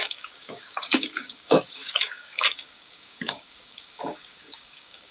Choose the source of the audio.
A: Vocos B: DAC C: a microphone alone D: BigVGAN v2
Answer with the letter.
B